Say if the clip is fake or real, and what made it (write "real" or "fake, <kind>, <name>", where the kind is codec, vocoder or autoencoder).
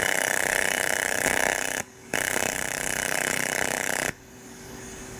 fake, codec, DAC